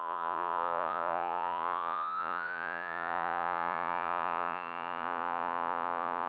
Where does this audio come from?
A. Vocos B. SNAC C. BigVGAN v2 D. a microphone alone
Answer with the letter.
A